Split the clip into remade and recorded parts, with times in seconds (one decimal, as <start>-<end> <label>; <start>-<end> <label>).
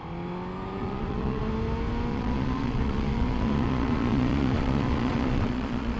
0.0-0.8 recorded; 0.8-1.4 remade; 1.4-2.1 recorded; 2.1-6.0 remade